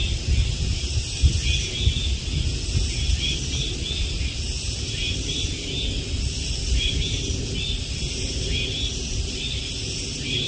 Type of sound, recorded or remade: recorded